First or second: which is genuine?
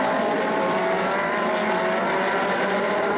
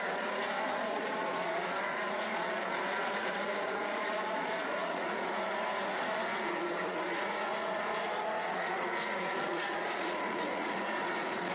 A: first